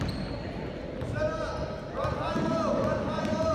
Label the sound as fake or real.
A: real